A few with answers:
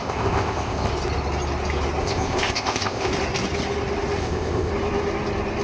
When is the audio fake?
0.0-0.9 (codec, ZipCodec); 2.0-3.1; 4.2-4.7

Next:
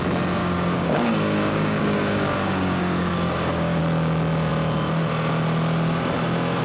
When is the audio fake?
0.4-3.8 (codec, DAC)